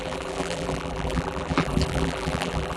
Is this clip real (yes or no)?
no